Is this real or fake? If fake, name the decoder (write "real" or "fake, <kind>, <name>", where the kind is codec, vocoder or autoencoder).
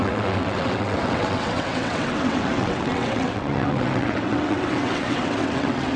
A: fake, vocoder, WaveNeXt